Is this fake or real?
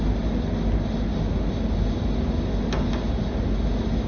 real